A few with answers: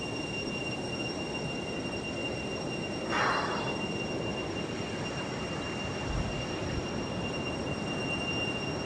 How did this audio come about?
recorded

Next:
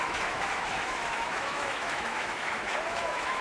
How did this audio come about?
remade